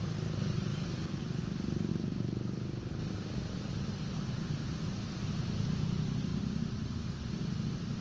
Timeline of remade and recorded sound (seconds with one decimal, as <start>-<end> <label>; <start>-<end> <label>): 0.0-1.9 remade; 1.9-2.8 recorded; 2.8-8.0 remade